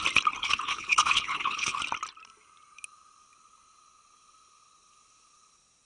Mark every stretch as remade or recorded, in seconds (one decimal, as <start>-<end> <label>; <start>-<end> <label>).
0.0-0.4 recorded; 0.4-1.8 remade; 1.8-5.9 recorded